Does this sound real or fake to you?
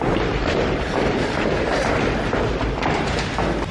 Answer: fake